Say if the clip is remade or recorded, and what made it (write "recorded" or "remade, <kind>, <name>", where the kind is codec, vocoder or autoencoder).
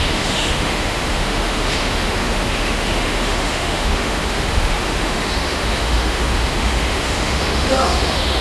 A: remade, autoencoder, DAC-VAE